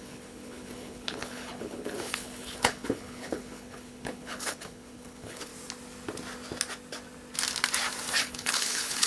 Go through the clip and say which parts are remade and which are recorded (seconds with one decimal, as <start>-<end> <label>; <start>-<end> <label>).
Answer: 0.0-5.5 remade; 5.5-8.2 recorded; 8.2-9.1 remade